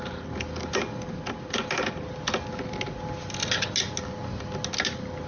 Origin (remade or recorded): recorded